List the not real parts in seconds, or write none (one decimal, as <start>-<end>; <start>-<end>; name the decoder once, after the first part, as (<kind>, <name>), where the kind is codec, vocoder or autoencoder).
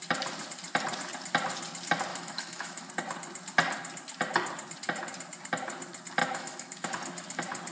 2.1-2.9 (autoencoder, DAC-VAE); 6.2-6.9